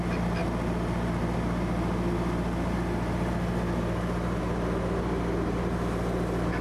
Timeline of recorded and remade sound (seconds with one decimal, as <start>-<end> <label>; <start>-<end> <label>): 0.0-6.6 recorded